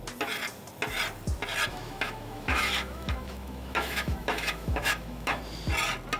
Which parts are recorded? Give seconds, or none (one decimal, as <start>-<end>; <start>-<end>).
0.0-1.7; 5.4-6.2